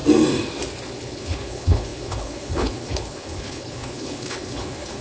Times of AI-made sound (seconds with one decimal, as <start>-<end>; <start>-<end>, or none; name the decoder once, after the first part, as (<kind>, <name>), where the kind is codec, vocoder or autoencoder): 1.0-5.0 (codec, HILCodec)